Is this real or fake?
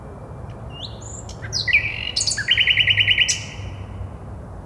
real